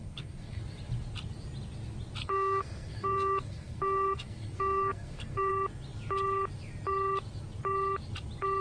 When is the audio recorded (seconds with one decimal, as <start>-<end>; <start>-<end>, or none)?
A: 0.6-2.2; 5.5-8.6